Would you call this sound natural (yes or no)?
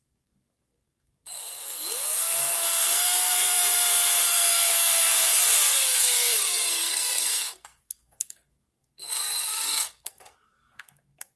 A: no